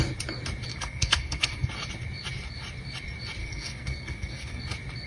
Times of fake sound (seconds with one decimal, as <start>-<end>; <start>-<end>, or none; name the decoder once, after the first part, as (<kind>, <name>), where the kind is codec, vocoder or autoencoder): 0.7-1.7 (codec, SNAC); 3.4-4.6